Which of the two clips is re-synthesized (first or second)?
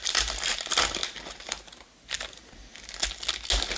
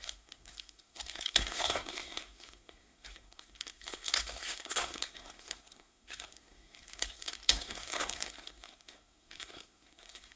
second